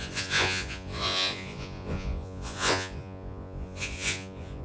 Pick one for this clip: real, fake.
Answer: fake